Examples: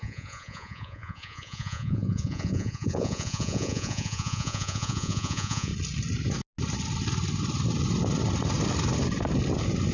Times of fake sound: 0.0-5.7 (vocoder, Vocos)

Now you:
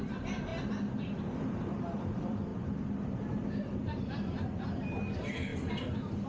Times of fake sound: 0.0-0.5 (vocoder, BigVGAN v2); 1.0-2.5; 3.8-6.3

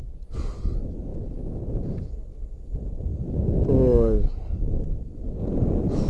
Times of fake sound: none

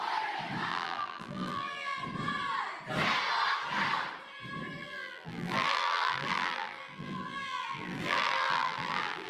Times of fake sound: 0.7-2.0 (vocoder, BigVGAN v2); 4.8-9.3

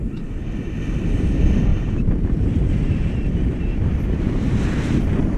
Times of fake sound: 1.7-4.1 (vocoder, BigVGAN v2)